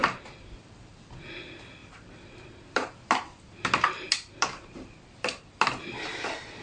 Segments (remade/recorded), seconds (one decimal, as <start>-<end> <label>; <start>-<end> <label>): 0.0-1.3 remade; 1.3-1.8 recorded; 1.8-5.8 remade; 5.8-6.6 recorded